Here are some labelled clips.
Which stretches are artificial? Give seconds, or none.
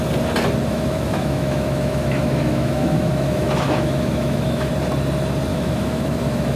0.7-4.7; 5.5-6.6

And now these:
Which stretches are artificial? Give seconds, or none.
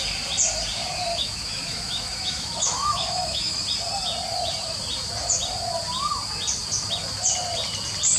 1.1-3.6